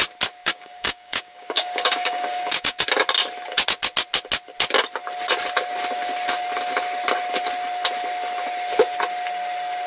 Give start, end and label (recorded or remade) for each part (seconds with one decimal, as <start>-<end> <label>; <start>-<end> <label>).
0.0-0.4 recorded; 0.4-2.8 remade; 2.8-9.9 recorded